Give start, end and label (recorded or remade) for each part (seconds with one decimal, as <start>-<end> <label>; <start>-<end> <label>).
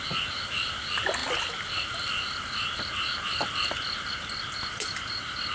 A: 0.0-5.5 recorded